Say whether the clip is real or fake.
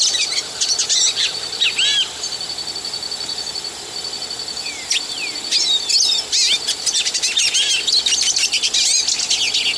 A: real